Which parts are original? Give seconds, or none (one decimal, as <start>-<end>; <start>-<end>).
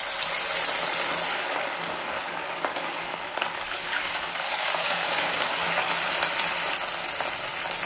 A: 0.0-1.3; 5.9-7.9